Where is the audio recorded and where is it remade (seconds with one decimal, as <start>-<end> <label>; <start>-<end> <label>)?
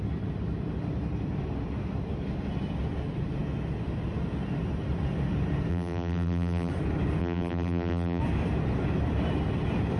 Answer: 0.0-5.7 recorded; 5.7-6.7 remade; 6.7-7.2 recorded; 7.2-8.2 remade; 8.2-10.0 recorded